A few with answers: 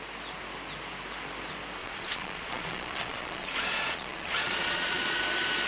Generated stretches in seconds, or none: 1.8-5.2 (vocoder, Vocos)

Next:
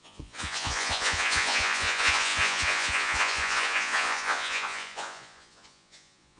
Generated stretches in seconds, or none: 0.0-6.4 (vocoder, Vocos)

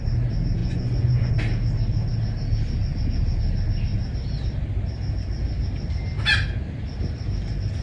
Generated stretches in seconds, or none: 0.6-1.3 (vocoder, Vocos)

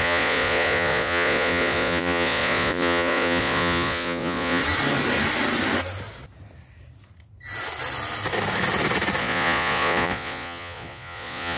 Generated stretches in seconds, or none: 0.0-4.6 (vocoder, Vocos); 9.2-11.6

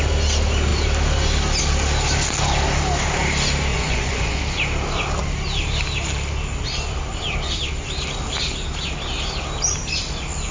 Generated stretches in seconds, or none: 3.7-4.4 (vocoder, Vocos)

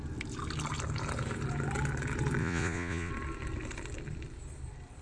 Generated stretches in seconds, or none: 2.4-3.1 (vocoder, Vocos)

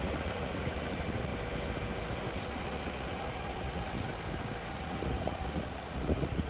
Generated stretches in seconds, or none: 0.0-1.3 (vocoder, Vocos); 2.3-4.1; 4.7-6.5

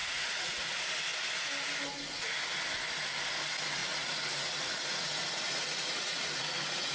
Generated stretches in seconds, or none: 0.0-0.7 (vocoder, Vocos); 3.8-6.9